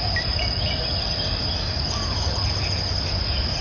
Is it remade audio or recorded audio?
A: recorded